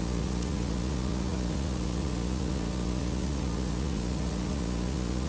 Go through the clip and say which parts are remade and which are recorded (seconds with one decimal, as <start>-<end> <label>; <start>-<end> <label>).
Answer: 0.0-5.3 remade